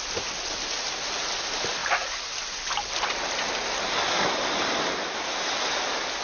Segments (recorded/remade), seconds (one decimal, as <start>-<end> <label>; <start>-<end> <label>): 0.0-6.2 recorded